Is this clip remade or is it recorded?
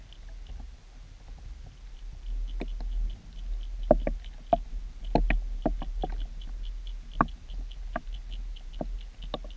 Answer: recorded